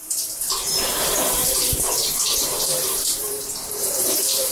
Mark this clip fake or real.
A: fake